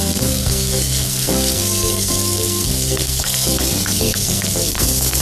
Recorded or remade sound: remade